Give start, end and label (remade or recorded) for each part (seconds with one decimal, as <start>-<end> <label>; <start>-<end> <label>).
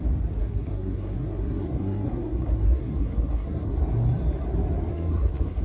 0.0-0.4 recorded; 0.4-3.8 remade; 3.8-4.9 recorded; 4.9-5.6 remade